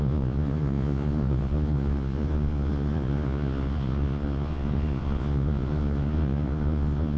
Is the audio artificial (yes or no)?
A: yes